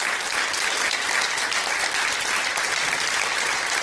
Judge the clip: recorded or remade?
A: recorded